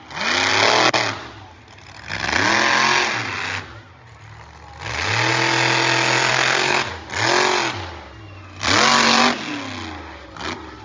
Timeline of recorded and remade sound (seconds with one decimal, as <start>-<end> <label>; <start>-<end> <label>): 0.0-6.3 recorded; 6.3-6.9 remade; 6.9-10.8 recorded